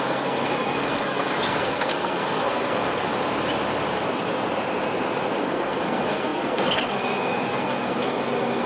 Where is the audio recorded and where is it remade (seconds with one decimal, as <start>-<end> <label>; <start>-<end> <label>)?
0.0-3.1 remade; 3.1-5.4 recorded; 5.4-8.7 remade